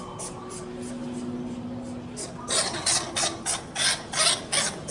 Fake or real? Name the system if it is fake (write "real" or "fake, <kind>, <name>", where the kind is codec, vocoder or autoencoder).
real